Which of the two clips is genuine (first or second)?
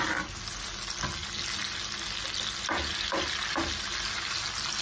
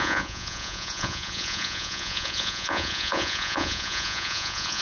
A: first